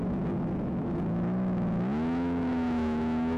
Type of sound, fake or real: fake